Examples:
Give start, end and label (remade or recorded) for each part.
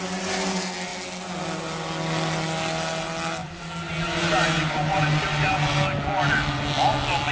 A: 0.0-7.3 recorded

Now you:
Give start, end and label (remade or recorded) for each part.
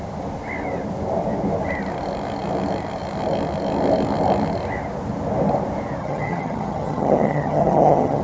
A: 0.0-6.0 recorded; 6.0-8.2 remade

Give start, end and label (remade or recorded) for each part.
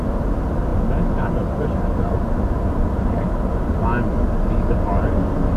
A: 0.0-5.6 recorded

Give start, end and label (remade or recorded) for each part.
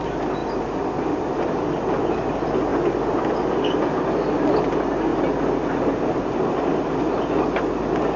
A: 0.0-8.2 recorded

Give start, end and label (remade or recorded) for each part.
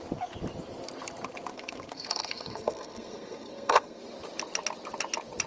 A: 0.0-1.5 recorded; 1.5-4.0 remade; 4.0-5.5 recorded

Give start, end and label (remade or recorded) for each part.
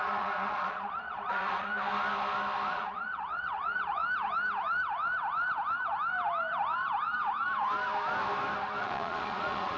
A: 0.0-1.7 remade; 1.7-2.7 recorded; 2.7-4.0 remade; 4.0-8.8 recorded; 8.8-9.8 remade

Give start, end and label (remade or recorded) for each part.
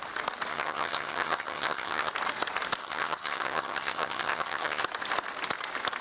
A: 0.0-0.5 recorded; 0.5-2.1 remade; 2.1-2.8 recorded; 2.8-4.8 remade; 4.8-6.0 recorded